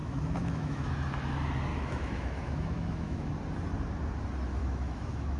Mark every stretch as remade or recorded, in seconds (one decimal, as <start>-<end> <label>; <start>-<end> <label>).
0.0-0.9 remade; 0.9-1.7 recorded; 1.7-3.3 remade; 3.3-4.6 recorded; 4.6-5.4 remade